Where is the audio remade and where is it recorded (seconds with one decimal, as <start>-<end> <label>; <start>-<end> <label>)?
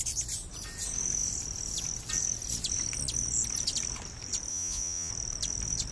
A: 0.0-4.5 recorded; 4.5-5.1 remade; 5.1-5.9 recorded